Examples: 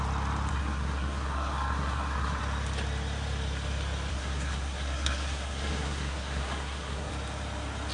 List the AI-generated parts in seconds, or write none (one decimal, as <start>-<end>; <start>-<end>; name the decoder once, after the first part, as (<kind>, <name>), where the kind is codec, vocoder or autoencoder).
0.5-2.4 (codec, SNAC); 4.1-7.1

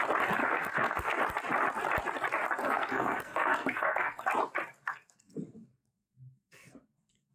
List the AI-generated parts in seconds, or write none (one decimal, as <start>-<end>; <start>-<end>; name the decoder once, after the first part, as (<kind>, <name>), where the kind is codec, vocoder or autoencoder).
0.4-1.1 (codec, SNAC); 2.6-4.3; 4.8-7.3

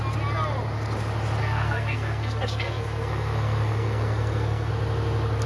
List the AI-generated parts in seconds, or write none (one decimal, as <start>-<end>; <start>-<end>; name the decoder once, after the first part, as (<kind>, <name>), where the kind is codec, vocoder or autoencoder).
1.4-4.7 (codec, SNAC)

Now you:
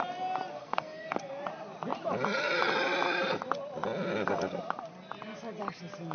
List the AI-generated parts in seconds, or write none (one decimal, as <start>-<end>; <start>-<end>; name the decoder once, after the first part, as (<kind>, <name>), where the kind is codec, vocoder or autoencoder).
0.6-1.3 (codec, SNAC)

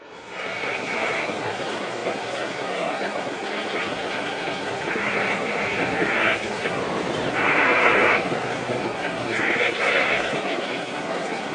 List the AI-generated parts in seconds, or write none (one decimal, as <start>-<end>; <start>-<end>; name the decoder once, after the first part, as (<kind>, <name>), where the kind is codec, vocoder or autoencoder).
0.0-6.8 (codec, SNAC); 7.3-11.5

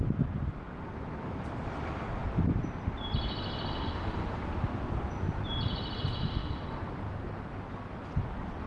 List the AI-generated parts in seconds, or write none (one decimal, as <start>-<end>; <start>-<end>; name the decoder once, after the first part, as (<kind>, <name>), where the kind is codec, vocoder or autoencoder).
none

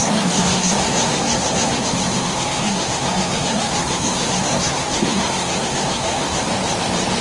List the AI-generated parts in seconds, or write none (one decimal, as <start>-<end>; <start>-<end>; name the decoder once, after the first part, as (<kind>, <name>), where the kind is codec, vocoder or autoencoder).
0.0-6.5 (codec, SNAC)

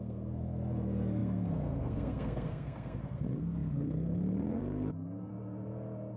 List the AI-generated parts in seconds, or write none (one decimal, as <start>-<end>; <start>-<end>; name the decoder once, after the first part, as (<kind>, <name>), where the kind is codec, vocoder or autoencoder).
0.0-5.3 (codec, SNAC)